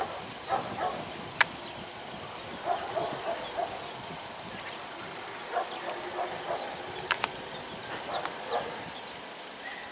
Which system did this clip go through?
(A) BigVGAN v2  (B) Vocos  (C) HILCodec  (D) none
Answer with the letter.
D